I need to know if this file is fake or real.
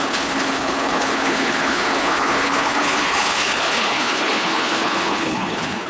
fake